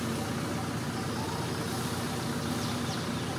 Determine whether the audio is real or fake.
real